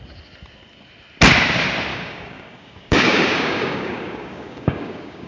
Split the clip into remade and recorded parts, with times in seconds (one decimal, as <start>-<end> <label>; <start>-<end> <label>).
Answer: 0.0-1.9 recorded; 1.9-5.3 remade